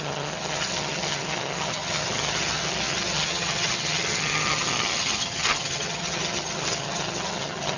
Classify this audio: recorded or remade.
remade